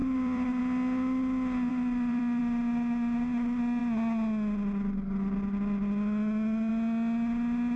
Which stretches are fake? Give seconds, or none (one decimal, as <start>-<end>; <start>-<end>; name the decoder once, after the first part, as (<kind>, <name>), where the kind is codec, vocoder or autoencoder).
0.0-0.6 (vocoder, BigVGAN v2); 1.7-2.4